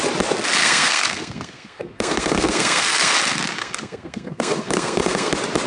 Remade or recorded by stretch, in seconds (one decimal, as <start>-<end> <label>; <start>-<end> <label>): 0.0-0.6 recorded; 0.6-3.1 remade; 3.1-3.6 recorded; 3.6-5.3 remade; 5.3-5.7 recorded